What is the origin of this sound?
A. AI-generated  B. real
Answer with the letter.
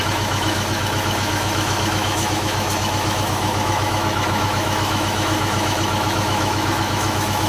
A